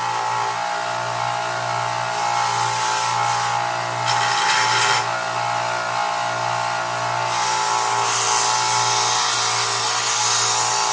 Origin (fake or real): real